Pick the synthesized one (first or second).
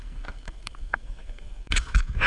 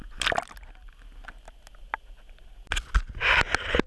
first